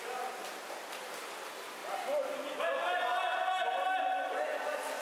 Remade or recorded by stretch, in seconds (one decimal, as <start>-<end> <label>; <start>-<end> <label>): 0.0-5.0 recorded